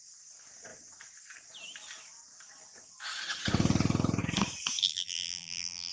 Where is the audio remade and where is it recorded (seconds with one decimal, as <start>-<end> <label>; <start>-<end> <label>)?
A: 0.0-4.8 recorded; 4.8-5.9 remade